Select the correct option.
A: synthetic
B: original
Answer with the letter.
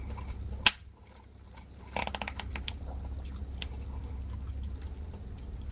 B